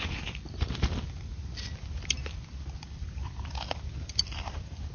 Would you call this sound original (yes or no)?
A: yes